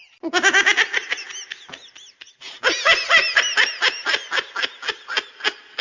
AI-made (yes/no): no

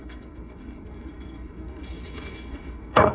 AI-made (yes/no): yes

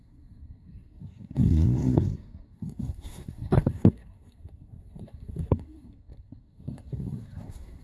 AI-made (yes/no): yes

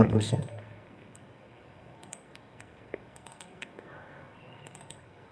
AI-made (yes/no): yes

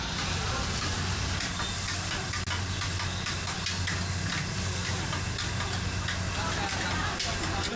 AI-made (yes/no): no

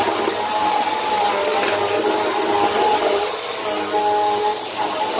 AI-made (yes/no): no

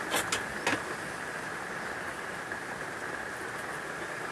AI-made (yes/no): no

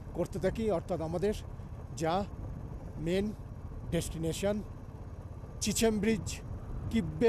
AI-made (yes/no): no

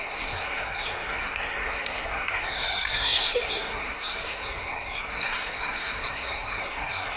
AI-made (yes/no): yes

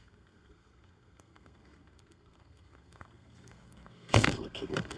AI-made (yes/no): yes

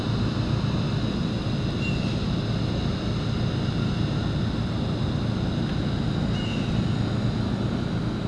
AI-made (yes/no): no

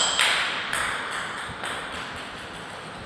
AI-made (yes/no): no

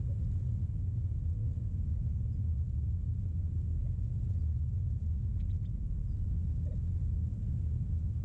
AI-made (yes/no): no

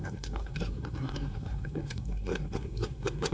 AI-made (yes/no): yes